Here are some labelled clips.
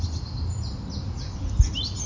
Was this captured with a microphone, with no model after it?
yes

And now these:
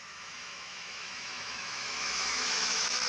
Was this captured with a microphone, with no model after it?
no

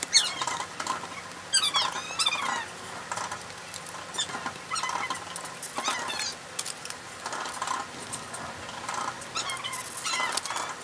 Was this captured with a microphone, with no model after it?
yes